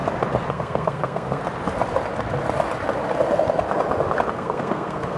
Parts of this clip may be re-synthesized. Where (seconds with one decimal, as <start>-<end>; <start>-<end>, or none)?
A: 0.5-1.4; 4.3-5.2